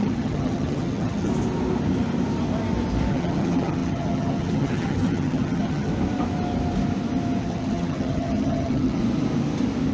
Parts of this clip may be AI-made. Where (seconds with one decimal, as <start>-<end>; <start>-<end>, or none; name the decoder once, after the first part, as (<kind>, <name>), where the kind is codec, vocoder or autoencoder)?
0.0-1.3 (vocoder, HiFi-GAN); 3.1-5.9; 7.4-9.0

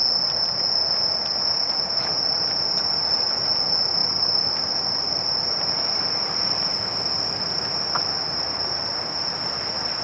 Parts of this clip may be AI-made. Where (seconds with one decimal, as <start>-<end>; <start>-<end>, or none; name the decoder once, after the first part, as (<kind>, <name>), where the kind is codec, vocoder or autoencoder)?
4.0-8.9 (vocoder, BigVGAN v2)

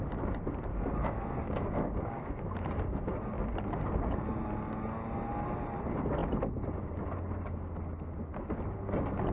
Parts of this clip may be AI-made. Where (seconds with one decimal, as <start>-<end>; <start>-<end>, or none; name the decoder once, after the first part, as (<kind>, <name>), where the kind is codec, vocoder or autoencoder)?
0.7-3.3 (codec, DAC)

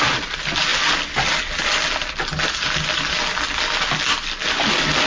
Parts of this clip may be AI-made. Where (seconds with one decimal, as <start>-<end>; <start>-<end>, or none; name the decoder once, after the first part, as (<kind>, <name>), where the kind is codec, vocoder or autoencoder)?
none